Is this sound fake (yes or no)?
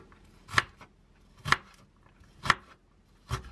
no